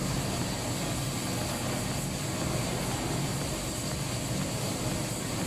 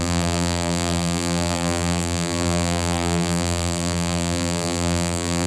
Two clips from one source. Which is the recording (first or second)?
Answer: first